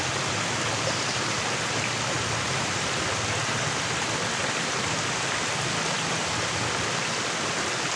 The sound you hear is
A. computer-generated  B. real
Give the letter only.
B